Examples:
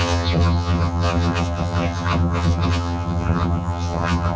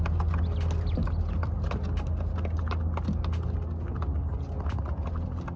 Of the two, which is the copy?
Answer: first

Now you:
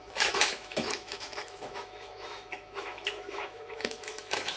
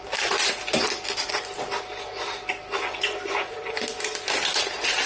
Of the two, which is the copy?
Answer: first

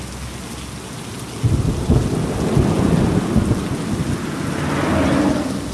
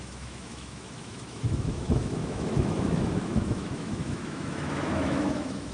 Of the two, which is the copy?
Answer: second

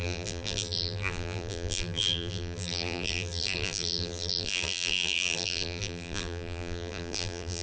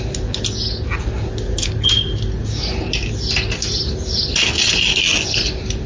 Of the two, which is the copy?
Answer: first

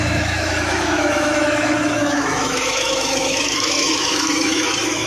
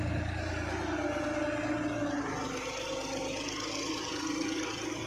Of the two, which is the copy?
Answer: first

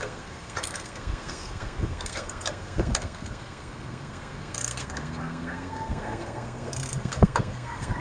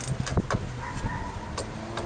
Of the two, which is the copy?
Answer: first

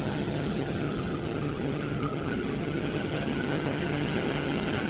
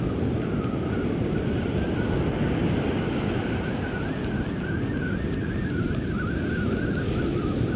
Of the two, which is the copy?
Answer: first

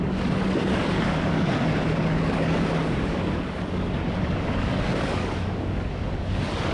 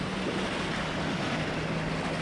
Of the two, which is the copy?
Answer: first